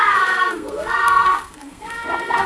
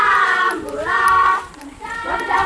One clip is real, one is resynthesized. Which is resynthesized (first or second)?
first